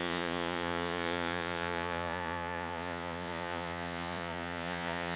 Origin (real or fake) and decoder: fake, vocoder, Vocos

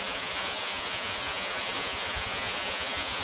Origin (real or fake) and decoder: fake, vocoder, Vocos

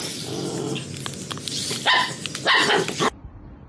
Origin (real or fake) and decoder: real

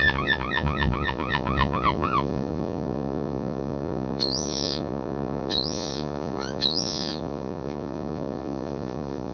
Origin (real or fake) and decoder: fake, vocoder, Vocos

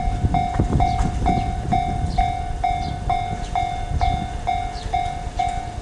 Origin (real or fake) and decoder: real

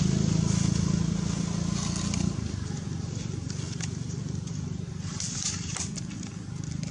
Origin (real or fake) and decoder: real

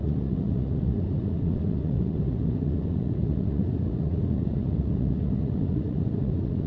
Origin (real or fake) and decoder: fake, vocoder, Vocos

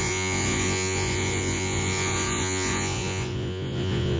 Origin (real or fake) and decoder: fake, vocoder, Vocos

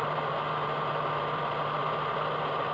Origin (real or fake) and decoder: real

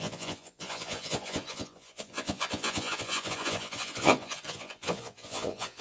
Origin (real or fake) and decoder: fake, vocoder, Vocos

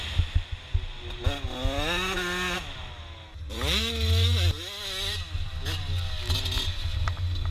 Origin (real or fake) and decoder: real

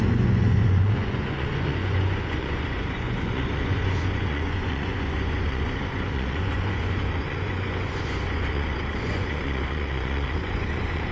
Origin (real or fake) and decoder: fake, vocoder, Vocos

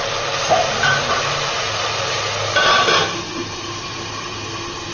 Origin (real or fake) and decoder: real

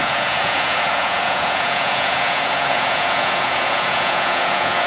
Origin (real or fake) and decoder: fake, vocoder, Vocos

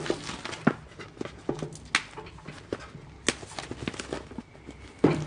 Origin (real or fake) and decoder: real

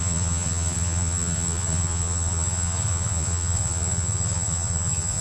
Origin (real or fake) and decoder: fake, vocoder, Vocos